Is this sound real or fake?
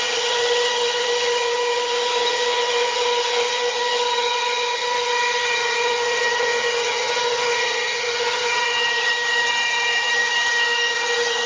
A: fake